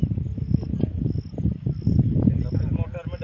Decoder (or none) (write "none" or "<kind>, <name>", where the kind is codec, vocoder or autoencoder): none